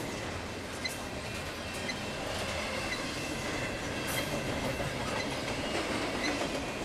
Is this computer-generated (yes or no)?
no